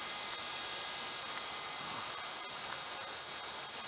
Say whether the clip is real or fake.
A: fake